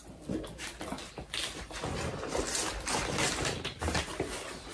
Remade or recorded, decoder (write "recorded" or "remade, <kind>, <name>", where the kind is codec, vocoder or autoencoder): recorded